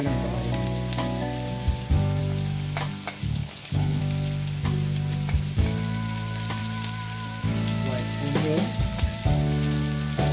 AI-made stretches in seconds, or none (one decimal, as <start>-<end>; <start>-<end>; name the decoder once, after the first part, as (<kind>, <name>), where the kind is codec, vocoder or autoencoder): 3.2-4.0 (codec, HILCodec)